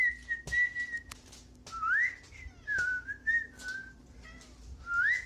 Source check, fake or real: real